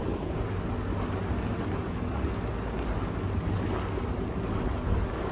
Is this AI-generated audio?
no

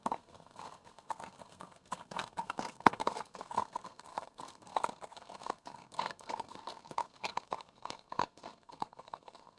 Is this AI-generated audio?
yes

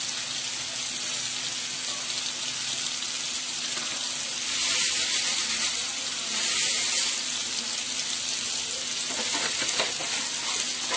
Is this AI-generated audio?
no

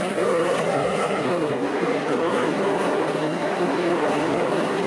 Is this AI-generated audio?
yes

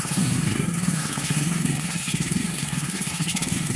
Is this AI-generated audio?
yes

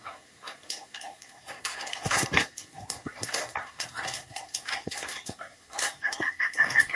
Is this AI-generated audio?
yes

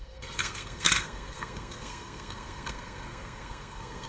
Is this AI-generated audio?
yes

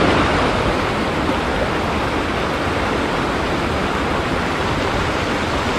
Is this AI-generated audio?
no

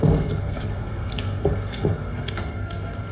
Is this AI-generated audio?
yes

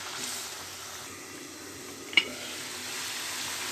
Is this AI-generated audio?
no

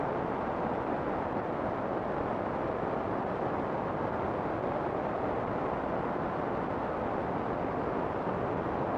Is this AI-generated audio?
no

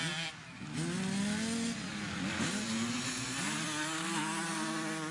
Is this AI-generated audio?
no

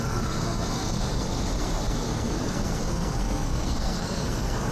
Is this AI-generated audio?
yes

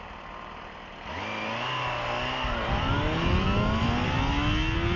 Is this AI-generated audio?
no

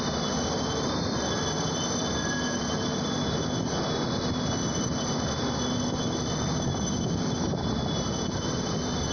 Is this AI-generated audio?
no